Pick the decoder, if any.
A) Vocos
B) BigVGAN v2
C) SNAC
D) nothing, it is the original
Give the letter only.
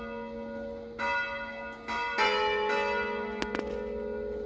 D